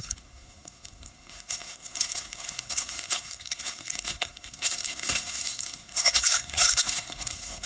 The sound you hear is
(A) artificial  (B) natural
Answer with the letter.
A